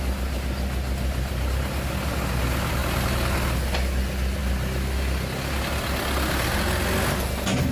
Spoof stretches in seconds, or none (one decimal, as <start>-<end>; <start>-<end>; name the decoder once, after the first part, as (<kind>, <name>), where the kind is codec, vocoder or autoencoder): none